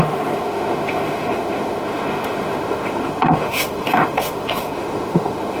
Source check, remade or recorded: remade